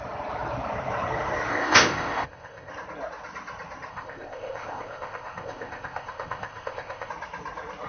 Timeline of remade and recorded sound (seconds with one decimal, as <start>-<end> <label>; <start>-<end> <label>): 0.0-1.5 recorded; 1.5-2.7 remade; 2.7-3.9 recorded; 3.9-7.1 remade; 7.1-7.9 recorded